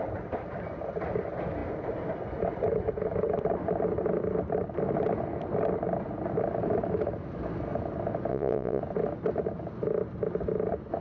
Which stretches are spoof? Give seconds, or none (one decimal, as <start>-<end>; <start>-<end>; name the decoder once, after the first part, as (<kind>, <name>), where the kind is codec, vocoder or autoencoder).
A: 8.3-8.8 (vocoder, Vocos)